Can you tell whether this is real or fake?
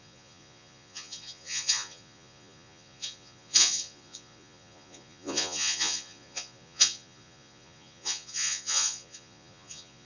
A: fake